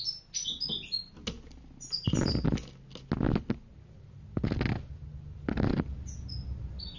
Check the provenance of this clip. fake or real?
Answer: real